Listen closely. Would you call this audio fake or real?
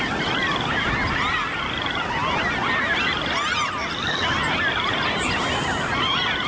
real